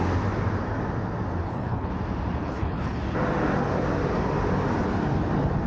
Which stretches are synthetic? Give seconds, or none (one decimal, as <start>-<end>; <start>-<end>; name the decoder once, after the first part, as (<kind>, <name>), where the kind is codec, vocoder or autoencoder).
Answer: 1.4-1.9 (codec, HILCodec); 2.4-3.0

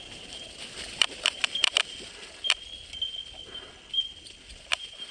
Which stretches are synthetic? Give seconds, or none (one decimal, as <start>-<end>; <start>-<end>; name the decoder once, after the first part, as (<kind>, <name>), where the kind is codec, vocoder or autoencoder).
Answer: 0.0-1.4 (vocoder, BigVGAN v2); 4.5-5.1